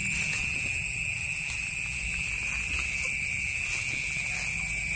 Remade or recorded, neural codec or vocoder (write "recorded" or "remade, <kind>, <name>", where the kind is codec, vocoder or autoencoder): recorded